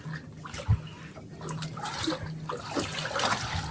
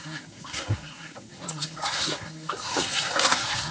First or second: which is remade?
second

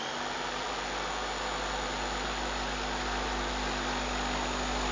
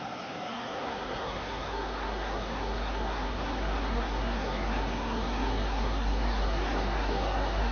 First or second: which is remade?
second